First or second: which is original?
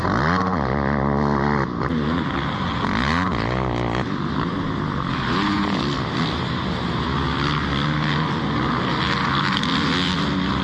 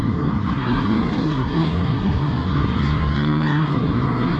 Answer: first